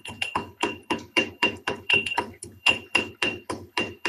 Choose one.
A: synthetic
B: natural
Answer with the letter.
A